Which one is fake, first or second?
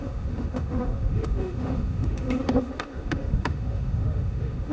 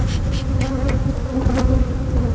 first